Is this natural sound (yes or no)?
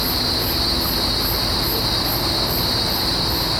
yes